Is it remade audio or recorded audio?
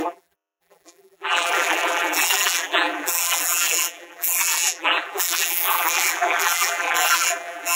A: remade